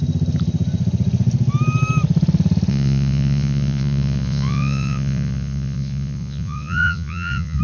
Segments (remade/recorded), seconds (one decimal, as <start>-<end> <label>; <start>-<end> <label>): 0.0-2.7 recorded; 2.7-7.6 remade